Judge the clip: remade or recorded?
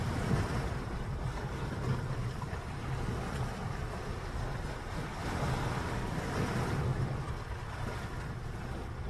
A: remade